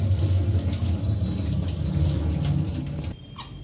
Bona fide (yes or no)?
yes